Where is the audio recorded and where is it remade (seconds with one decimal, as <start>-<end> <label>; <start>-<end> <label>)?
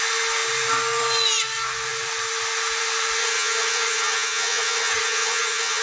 0.0-3.2 recorded; 3.2-5.8 remade